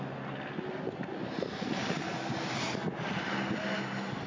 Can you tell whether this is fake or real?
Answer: real